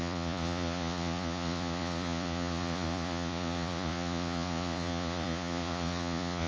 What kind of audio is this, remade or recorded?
remade